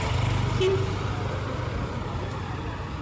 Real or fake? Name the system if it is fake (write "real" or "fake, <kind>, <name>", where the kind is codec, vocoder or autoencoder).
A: real